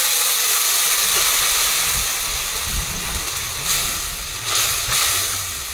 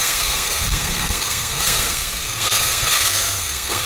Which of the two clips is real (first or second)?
first